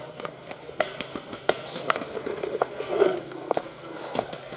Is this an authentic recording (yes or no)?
no